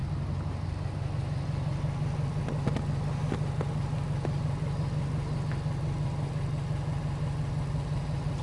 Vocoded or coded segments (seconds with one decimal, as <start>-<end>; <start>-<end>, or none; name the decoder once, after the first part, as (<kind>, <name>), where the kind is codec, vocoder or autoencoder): none